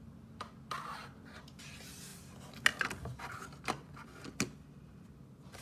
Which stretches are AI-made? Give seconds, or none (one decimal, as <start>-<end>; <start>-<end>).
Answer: none